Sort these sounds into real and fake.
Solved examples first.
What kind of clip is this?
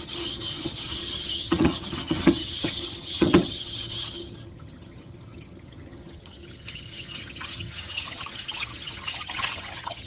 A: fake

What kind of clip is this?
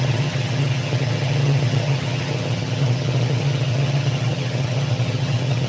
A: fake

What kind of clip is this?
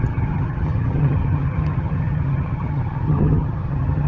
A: fake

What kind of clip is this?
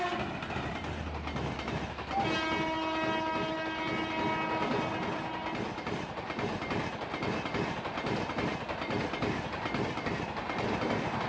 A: real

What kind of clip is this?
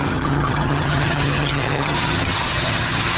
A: fake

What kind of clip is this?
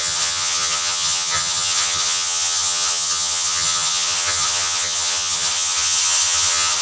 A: fake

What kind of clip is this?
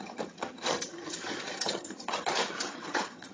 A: fake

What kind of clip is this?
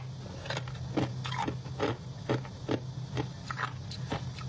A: real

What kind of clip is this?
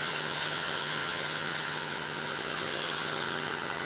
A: fake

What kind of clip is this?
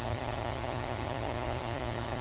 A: fake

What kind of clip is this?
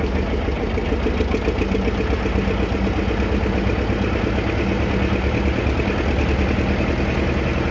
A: real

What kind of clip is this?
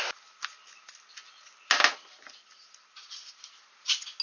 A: real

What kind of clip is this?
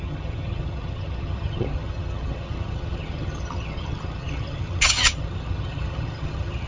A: fake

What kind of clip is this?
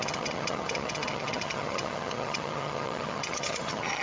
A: fake